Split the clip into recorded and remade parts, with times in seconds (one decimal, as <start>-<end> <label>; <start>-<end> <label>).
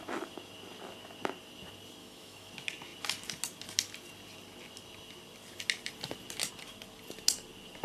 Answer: 0.0-2.0 recorded; 2.0-2.5 remade; 2.5-7.8 recorded